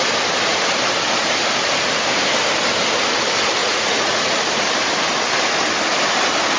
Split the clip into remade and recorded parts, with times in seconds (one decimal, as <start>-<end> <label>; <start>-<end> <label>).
0.0-3.6 recorded; 3.6-4.4 remade; 4.4-6.6 recorded